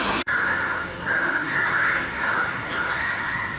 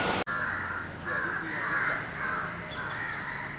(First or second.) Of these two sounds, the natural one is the second